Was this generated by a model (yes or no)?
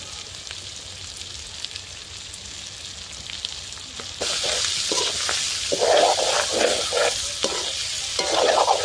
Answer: no